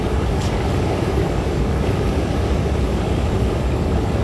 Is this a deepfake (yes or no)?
yes